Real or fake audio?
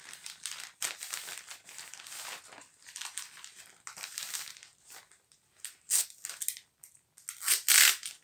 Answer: real